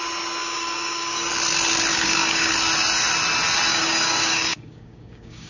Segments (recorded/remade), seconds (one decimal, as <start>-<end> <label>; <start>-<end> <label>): 0.0-0.4 recorded; 0.4-1.3 remade; 1.3-1.9 recorded; 1.9-2.5 remade; 2.5-3.7 recorded; 3.7-5.5 remade

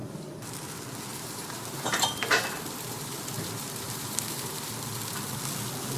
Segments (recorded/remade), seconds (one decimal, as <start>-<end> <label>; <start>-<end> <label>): 0.0-1.1 recorded; 1.1-4.7 remade; 4.7-6.0 recorded

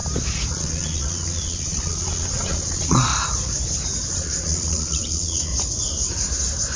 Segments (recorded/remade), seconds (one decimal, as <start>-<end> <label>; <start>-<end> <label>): 0.0-0.5 recorded; 0.5-3.1 remade; 3.1-4.1 recorded; 4.1-5.5 remade; 5.5-6.8 recorded

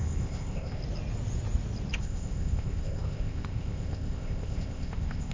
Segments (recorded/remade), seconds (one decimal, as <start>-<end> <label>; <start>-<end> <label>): 0.0-0.8 remade; 0.8-2.0 recorded; 2.0-5.3 remade

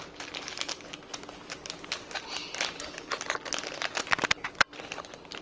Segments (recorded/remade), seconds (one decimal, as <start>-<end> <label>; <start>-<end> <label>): 0.0-5.4 recorded